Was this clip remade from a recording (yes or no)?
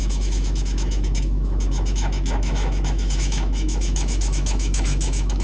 yes